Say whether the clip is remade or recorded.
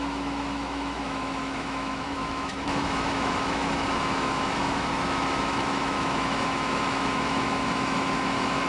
remade